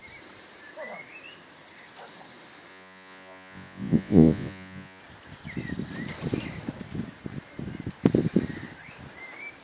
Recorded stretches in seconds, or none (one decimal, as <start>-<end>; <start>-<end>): 0.0-2.7; 5.0-9.6